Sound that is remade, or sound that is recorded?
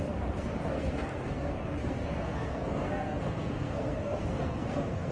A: remade